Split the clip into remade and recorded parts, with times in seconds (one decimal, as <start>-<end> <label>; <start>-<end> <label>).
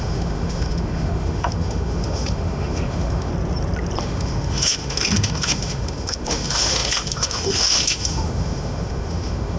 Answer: 0.0-3.3 remade; 3.3-4.0 recorded; 4.0-9.6 remade